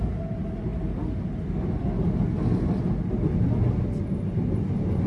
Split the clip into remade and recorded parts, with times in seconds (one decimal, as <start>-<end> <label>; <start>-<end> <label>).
0.0-5.1 recorded